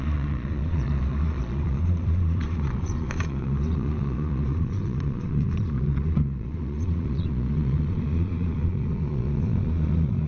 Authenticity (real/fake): fake